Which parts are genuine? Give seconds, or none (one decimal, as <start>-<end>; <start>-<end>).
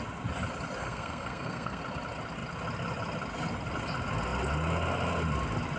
0.0-0.8; 1.8-5.8